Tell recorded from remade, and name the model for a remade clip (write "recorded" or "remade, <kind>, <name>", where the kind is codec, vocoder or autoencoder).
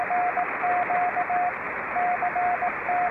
recorded